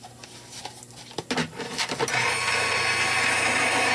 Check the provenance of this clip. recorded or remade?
recorded